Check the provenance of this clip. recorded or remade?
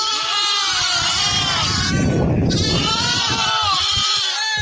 remade